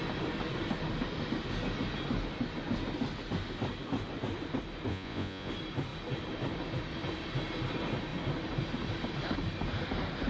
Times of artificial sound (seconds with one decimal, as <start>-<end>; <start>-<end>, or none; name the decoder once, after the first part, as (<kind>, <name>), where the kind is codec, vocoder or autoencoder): 4.9-5.5 (vocoder, Vocos)